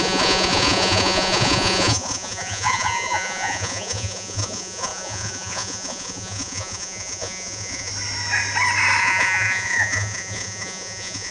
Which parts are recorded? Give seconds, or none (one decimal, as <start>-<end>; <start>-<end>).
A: 7.9-9.0